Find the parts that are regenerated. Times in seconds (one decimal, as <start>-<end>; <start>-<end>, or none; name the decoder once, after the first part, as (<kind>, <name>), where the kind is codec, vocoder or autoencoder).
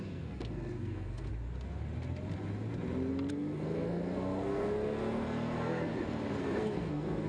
0.0-1.3 (codec, SNAC); 3.3-5.9; 6.4-7.3